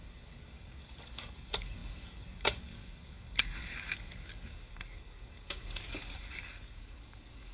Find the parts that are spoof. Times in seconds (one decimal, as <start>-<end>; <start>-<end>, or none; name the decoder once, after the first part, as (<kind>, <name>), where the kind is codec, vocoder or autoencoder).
0.0-7.5 (codec, DAC)